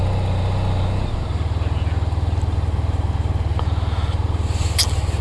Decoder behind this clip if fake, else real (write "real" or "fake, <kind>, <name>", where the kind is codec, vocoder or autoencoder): real